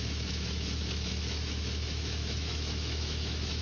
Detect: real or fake fake